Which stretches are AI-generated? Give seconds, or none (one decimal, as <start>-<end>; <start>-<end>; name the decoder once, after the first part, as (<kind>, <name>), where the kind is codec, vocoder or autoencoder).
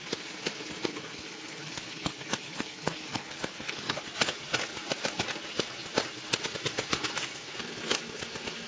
0.9-4.0 (codec, HILCodec)